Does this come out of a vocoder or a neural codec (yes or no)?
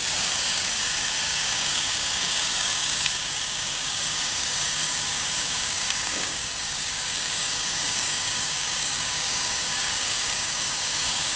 yes